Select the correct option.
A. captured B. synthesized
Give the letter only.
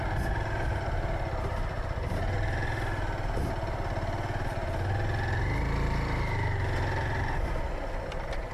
A